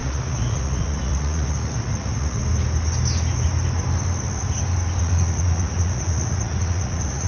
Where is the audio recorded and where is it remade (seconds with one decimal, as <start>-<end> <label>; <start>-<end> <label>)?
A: 0.0-2.4 remade; 2.4-5.0 recorded; 5.0-7.3 remade